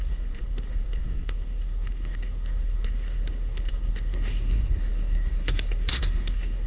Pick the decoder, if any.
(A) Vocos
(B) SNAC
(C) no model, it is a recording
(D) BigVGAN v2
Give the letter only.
B